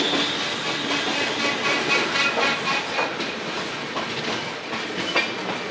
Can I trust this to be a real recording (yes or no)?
yes